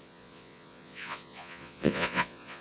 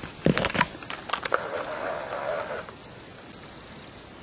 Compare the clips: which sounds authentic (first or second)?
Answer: second